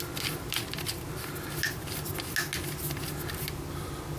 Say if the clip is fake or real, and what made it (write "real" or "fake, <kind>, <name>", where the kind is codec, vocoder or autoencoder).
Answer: real